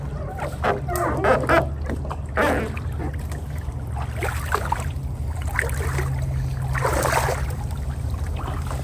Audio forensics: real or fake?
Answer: real